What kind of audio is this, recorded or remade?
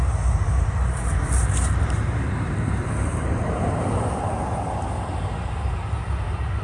remade